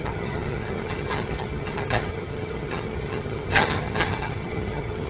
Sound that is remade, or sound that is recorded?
remade